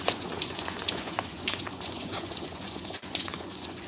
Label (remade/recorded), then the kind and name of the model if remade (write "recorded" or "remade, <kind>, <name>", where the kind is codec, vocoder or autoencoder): remade, vocoder, Vocos